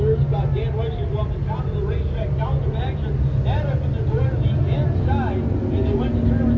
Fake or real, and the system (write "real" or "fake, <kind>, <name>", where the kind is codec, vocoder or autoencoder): real